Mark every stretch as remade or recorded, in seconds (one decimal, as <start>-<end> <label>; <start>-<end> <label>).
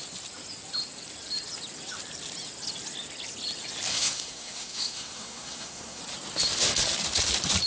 0.0-3.9 recorded; 3.9-6.0 remade; 6.0-7.7 recorded